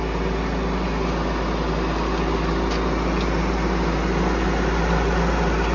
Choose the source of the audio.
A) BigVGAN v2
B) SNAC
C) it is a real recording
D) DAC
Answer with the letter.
C